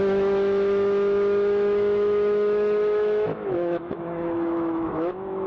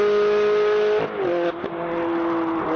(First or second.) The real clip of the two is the second